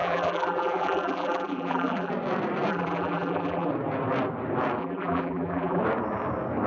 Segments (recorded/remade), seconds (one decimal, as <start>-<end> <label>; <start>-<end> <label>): 0.0-2.1 remade; 2.1-2.7 recorded; 2.7-3.7 remade; 3.7-4.8 recorded; 4.8-5.8 remade; 5.8-6.7 recorded

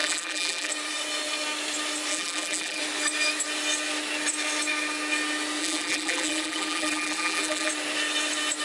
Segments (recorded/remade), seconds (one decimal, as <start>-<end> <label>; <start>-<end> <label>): 0.0-0.7 remade; 0.7-2.1 recorded; 2.1-2.8 remade; 2.8-5.6 recorded; 5.6-7.7 remade; 7.7-8.6 recorded